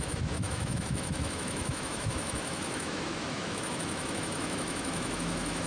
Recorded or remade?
remade